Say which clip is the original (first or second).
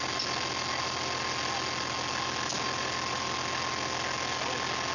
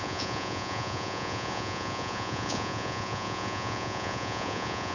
first